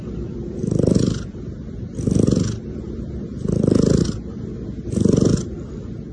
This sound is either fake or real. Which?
real